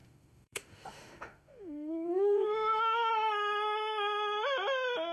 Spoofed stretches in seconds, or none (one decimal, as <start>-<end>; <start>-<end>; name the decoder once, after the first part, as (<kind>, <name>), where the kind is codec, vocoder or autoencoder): 0.0-3.1 (autoencoder, DAC-VAE)